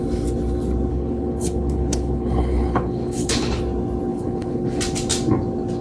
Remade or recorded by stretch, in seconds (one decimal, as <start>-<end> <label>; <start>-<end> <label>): 0.0-0.9 recorded; 0.9-3.6 remade; 3.6-4.1 recorded; 4.1-4.8 remade; 4.8-5.8 recorded